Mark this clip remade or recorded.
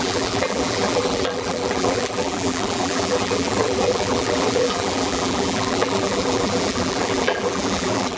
remade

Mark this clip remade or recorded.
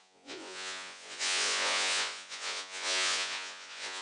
remade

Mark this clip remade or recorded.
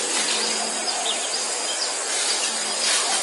recorded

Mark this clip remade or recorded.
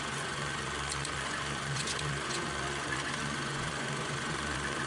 remade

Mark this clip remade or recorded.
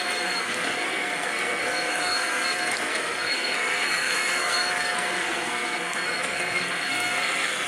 remade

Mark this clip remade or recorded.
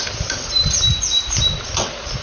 recorded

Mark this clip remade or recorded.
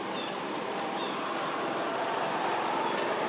recorded